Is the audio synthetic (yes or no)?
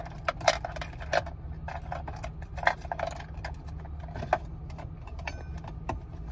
no